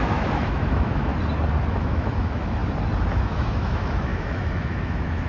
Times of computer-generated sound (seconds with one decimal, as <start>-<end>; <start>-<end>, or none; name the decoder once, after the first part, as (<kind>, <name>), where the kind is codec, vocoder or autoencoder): 0.0-1.1 (autoencoder, DAC-VAE); 1.7-2.6; 3.2-5.3